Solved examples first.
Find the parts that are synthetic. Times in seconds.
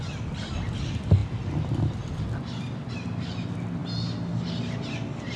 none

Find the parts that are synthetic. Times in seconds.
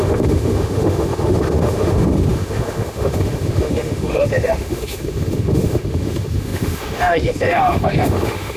0.0-8.6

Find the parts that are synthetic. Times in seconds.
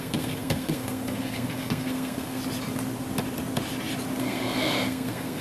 0.0-2.4; 4.2-5.4